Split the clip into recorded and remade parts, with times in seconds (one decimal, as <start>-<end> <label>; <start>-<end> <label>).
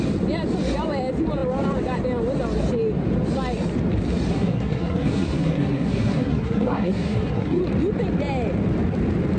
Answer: 0.0-4.3 recorded; 4.3-7.6 remade; 7.6-9.4 recorded